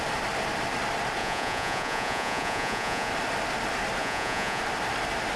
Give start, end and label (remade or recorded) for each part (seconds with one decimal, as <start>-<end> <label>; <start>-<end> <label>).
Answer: 0.0-1.2 recorded; 1.2-3.1 remade; 3.1-4.0 recorded; 4.0-4.6 remade; 4.6-5.4 recorded